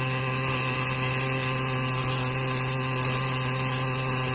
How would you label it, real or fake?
real